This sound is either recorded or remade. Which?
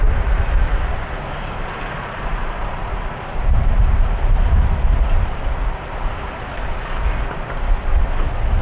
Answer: recorded